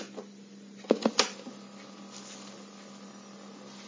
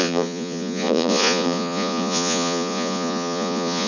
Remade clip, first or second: second